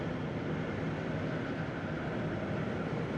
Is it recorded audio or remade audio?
recorded